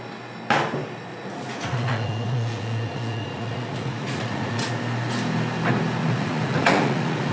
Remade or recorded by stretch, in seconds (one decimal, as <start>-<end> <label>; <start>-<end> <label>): 0.0-1.1 recorded; 1.1-4.7 remade; 4.7-6.0 recorded; 6.0-7.3 remade